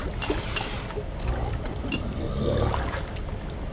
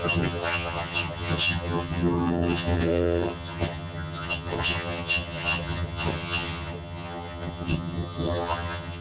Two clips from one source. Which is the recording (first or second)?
first